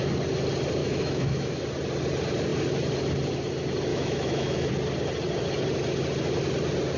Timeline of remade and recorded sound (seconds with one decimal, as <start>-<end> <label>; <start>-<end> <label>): 0.0-0.8 recorded; 0.8-1.6 remade; 1.6-3.9 recorded; 3.9-4.7 remade; 4.7-7.0 recorded